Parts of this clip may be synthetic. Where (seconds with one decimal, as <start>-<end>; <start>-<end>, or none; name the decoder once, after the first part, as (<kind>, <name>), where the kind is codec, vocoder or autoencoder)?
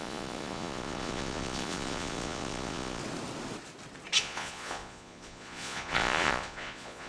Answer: 0.0-3.0 (vocoder, Vocos); 4.2-7.1